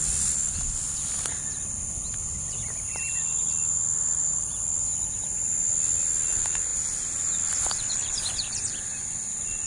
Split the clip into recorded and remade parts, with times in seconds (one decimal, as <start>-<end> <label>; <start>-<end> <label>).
0.0-9.7 recorded